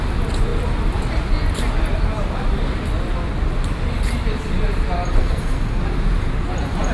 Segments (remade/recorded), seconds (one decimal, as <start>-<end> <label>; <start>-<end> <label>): 0.0-5.2 recorded; 5.2-5.8 remade; 5.8-6.9 recorded